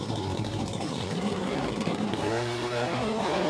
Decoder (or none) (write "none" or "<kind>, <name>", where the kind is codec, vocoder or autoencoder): codec, SNAC